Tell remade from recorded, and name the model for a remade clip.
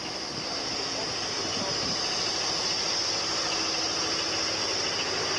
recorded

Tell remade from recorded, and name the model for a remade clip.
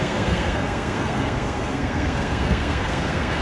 remade, codec, SNAC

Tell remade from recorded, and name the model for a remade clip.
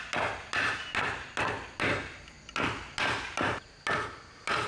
recorded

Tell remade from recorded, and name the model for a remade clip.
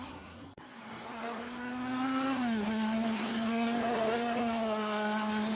remade, codec, SNAC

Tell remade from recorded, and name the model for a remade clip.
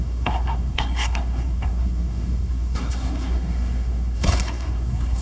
remade, codec, SNAC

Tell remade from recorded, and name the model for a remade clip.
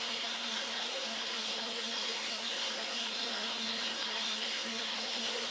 remade, codec, SNAC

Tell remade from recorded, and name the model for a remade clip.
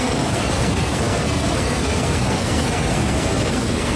remade, codec, SNAC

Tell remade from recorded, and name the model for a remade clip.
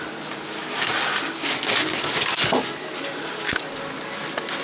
recorded